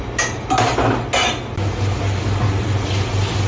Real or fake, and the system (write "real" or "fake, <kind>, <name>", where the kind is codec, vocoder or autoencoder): real